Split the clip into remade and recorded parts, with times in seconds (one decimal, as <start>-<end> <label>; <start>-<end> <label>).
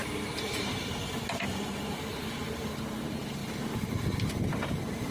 0.0-3.4 remade; 3.4-4.3 recorded; 4.3-5.1 remade